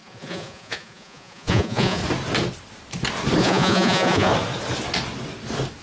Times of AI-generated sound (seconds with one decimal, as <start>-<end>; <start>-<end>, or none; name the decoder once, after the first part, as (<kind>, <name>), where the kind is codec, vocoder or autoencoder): 0.0-2.0 (vocoder, Vocos); 3.4-4.3